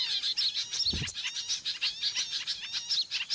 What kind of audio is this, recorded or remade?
recorded